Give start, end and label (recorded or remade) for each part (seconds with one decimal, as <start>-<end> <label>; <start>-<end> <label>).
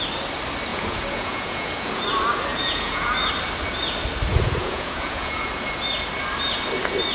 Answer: 0.0-0.7 recorded; 0.7-2.0 remade; 2.0-2.5 recorded; 2.5-3.1 remade; 3.1-4.3 recorded; 4.3-5.5 remade; 5.5-7.1 recorded